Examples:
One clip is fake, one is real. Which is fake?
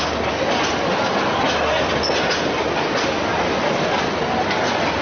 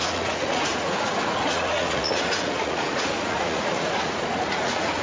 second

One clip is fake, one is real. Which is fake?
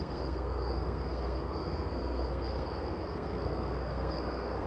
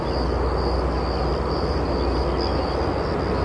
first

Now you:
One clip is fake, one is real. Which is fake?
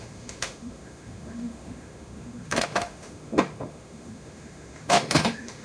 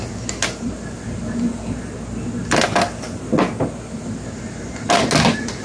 first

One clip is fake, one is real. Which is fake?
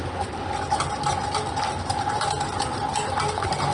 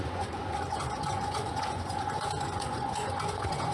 second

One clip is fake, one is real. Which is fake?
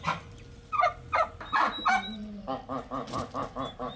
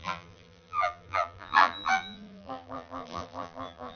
second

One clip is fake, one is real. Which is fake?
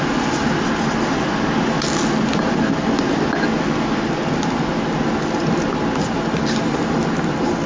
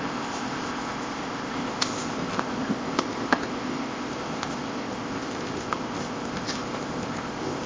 second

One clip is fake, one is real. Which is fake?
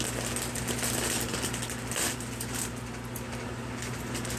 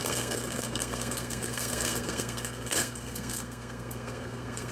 second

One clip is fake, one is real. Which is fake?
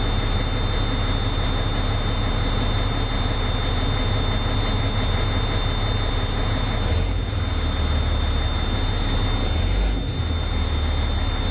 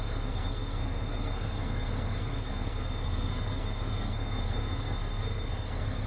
second